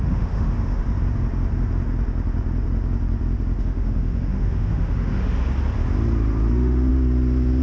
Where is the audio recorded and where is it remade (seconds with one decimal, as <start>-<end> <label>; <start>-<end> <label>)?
0.0-0.8 remade; 0.8-3.6 recorded; 3.6-5.4 remade; 5.4-6.5 recorded; 6.5-6.9 remade; 6.9-7.6 recorded